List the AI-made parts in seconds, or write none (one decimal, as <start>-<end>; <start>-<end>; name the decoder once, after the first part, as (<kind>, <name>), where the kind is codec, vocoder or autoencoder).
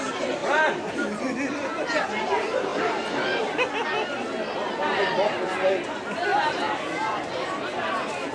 6.3-7.2 (vocoder, BigVGAN v2)